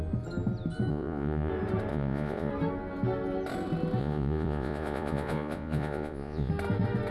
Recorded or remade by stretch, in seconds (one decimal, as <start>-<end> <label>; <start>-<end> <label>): 0.0-0.9 recorded; 0.9-1.5 remade; 1.5-1.9 recorded; 1.9-2.5 remade; 2.5-4.0 recorded; 4.0-6.5 remade; 6.5-7.1 recorded